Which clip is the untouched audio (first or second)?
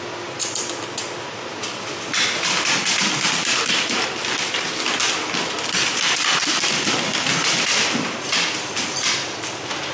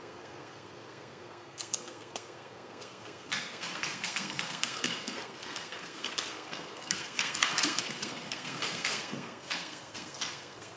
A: first